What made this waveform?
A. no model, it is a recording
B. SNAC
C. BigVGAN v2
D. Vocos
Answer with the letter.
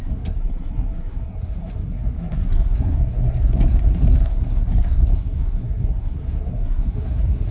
B